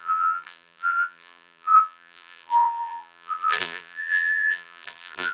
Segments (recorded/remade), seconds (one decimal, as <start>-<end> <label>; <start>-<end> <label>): 0.0-5.3 remade